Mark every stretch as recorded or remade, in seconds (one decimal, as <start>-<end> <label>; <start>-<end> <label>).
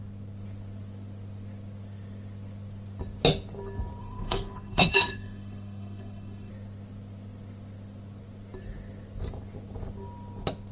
0.0-4.0 recorded; 4.0-6.5 remade; 6.5-10.7 recorded